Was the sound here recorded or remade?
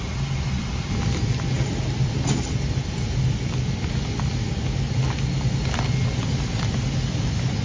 recorded